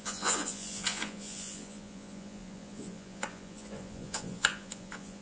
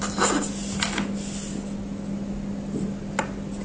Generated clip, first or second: first